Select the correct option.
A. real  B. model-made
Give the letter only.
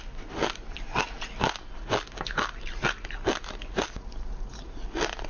A